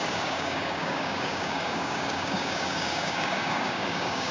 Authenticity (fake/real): fake